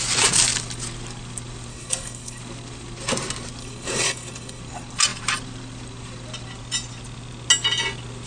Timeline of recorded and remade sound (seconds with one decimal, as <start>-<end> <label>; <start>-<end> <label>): 0.0-1.7 recorded; 1.7-2.4 remade; 2.4-3.6 recorded; 3.6-4.6 remade; 4.6-8.3 recorded